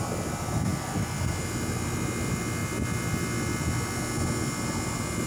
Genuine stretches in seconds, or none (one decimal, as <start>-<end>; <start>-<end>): 0.0-5.3